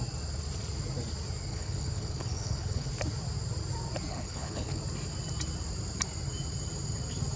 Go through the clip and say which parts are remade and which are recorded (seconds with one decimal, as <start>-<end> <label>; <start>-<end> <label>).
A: 0.0-1.5 recorded; 1.5-2.9 remade; 2.9-4.1 recorded; 4.1-4.8 remade; 4.8-7.4 recorded